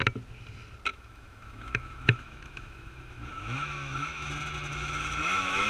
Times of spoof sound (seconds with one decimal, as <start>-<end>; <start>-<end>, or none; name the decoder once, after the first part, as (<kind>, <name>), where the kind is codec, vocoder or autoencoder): 0.9-4.3 (autoencoder, DAC-VAE); 4.7-5.7